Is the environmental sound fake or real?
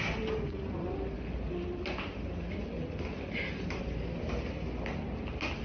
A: real